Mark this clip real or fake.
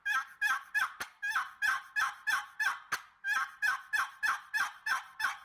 real